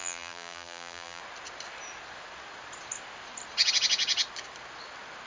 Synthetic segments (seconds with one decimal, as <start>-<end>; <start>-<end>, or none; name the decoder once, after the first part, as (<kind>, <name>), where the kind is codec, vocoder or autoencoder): 0.0-1.2 (vocoder, BigVGAN v2)